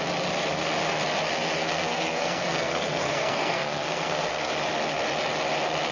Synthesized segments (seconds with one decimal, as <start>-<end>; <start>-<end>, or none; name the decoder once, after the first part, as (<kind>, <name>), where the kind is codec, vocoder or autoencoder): 1.6-4.5 (codec, SNAC)

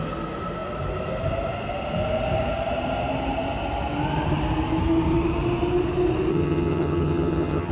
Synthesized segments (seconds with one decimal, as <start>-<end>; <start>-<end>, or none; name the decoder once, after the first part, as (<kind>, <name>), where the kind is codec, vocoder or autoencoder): 6.3-7.7 (vocoder, HiFi-GAN)

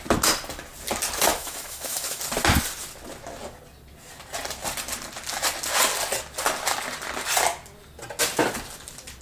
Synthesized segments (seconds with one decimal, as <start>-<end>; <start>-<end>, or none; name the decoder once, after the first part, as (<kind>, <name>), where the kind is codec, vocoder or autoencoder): 1.3-2.2 (autoencoder, DAC-VAE)

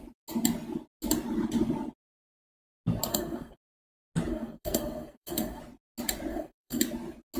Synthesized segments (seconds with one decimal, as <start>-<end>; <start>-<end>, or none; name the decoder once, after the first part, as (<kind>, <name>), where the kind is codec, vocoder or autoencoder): 3.1-3.9 (codec, SNAC); 4.3-5.6; 6.3-6.8

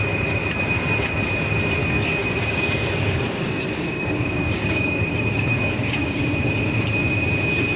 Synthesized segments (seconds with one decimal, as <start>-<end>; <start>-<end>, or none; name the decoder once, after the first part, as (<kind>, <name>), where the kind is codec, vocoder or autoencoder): 1.8-6.2 (codec, DAC)

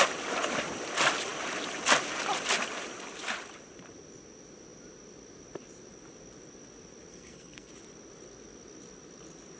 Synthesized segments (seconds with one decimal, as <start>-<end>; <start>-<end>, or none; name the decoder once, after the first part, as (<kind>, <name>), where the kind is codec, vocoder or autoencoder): 7.1-7.7 (codec, SNAC)

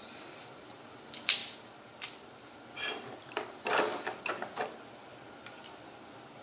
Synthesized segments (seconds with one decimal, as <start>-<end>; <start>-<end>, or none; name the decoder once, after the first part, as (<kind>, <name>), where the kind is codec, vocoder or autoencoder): 0.0-1.4 (vocoder, BigVGAN v2); 3.3-3.7